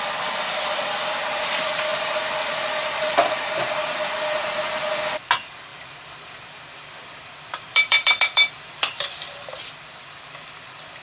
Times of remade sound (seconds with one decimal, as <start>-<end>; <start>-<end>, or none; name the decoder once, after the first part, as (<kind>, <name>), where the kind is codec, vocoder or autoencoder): 1.9-4.7 (vocoder, BigVGAN v2); 5.7-9.6